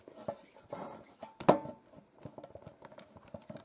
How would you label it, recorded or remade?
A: recorded